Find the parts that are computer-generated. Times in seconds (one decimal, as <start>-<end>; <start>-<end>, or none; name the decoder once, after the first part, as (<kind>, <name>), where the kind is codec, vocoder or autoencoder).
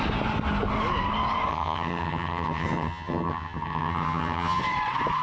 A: 1.5-4.6 (vocoder, HiFi-GAN)